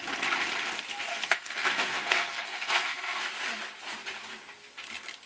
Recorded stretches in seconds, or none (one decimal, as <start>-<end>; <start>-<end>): 0.0-1.1; 3.3-5.3